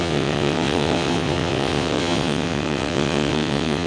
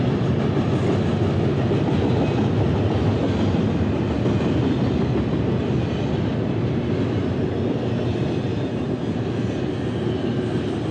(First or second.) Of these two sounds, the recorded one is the second